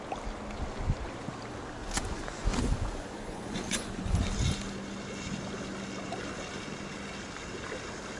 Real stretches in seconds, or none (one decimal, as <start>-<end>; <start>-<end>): 0.0-1.8; 4.2-8.2